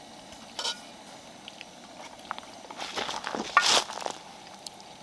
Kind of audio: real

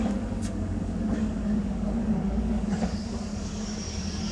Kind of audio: fake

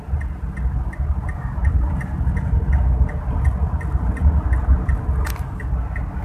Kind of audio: real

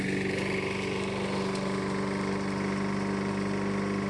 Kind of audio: real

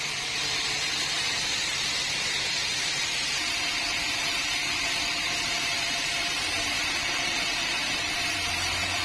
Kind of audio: fake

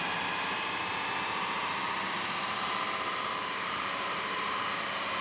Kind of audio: fake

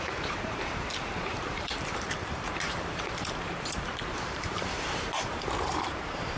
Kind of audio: fake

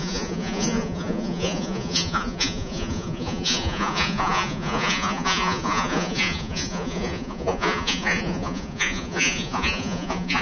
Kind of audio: fake